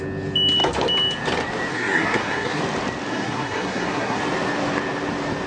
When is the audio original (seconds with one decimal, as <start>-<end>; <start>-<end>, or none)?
0.0-1.7; 2.6-3.1; 4.2-5.5